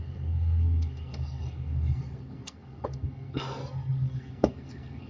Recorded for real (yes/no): no